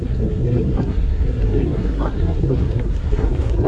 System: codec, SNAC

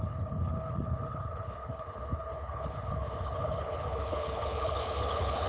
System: codec, HILCodec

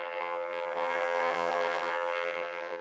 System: vocoder, HiFi-GAN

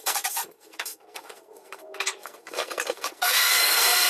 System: codec, SNAC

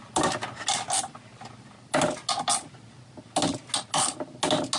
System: none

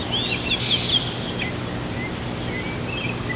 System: none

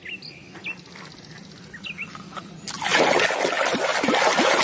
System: none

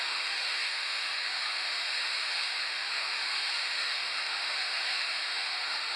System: autoencoder, DAC-VAE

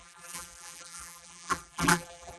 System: vocoder, BigVGAN v2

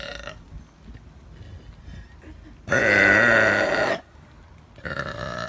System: none